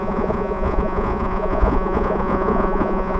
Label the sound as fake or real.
fake